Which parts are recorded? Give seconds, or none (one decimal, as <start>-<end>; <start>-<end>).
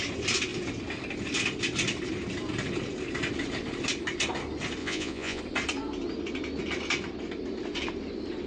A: 0.0-4.8; 5.4-8.5